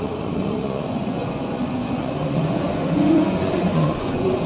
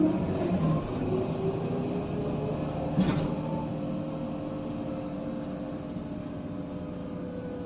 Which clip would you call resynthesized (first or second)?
first